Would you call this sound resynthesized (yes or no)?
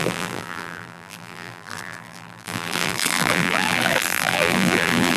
yes